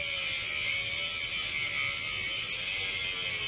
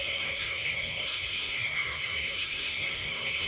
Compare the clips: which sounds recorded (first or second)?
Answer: first